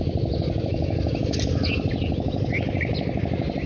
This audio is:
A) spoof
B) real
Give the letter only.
B